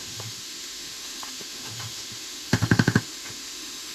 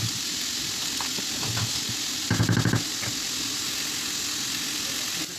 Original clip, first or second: second